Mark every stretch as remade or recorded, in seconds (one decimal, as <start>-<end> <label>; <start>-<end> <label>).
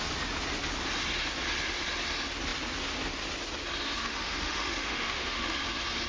0.0-4.0 recorded; 4.0-5.6 remade; 5.6-6.1 recorded